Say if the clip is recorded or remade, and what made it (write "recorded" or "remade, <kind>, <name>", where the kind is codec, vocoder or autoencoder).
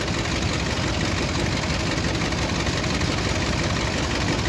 recorded